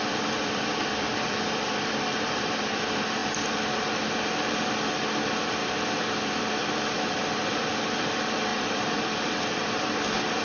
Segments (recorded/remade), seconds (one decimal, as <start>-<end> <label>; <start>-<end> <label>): 0.0-3.2 remade; 3.2-6.2 recorded; 6.2-10.4 remade

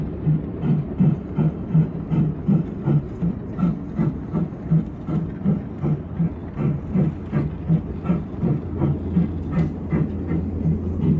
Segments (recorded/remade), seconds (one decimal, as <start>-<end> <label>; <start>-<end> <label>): 0.0-11.2 recorded

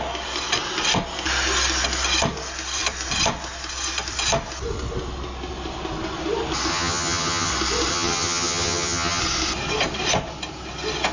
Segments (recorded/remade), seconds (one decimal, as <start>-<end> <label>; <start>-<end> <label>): 0.0-6.7 recorded; 6.7-7.5 remade; 7.5-7.9 recorded; 7.9-9.2 remade; 9.2-11.1 recorded

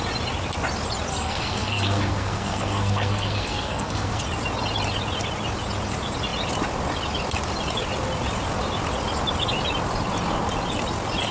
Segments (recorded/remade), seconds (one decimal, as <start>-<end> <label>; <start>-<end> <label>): 0.0-1.1 recorded; 1.1-4.2 remade; 4.2-11.3 recorded

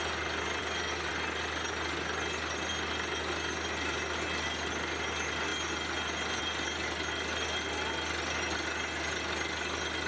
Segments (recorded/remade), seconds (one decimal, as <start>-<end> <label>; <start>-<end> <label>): 0.0-10.1 recorded